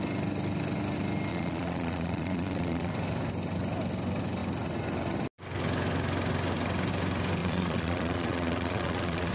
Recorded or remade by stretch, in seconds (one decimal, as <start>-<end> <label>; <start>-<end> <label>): 0.0-1.3 recorded; 1.3-2.9 remade; 2.9-7.4 recorded; 7.4-9.3 remade

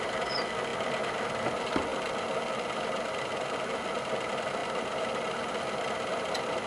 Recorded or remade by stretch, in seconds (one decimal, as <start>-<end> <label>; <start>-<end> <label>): 0.0-0.7 recorded; 0.7-1.4 remade; 1.4-6.7 recorded

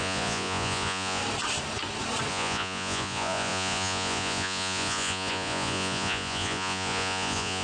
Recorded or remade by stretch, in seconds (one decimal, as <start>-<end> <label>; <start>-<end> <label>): 0.0-1.2 remade; 1.2-2.3 recorded; 2.3-7.6 remade

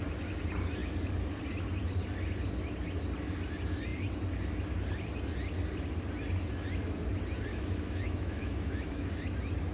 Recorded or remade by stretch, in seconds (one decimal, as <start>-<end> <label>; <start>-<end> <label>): 0.0-7.5 recorded; 7.5-9.1 remade; 9.1-9.7 recorded

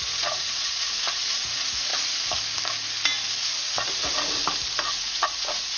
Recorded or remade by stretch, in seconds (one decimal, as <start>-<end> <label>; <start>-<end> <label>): 0.0-1.9 remade; 1.9-5.0 recorded; 5.0-5.8 remade